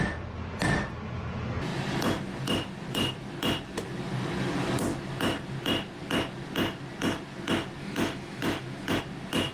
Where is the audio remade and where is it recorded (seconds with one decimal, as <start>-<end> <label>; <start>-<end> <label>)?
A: 0.0-7.8 recorded; 7.8-9.0 remade; 9.0-9.5 recorded